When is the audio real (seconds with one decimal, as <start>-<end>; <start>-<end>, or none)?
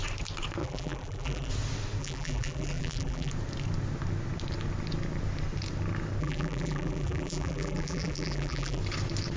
0.0-0.6; 1.5-2.0; 3.3-6.2; 8.8-9.4